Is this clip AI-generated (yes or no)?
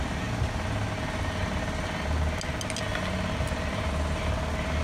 no